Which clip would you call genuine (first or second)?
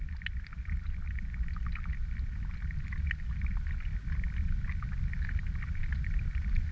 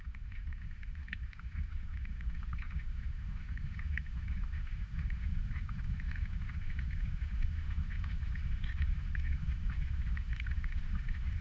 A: first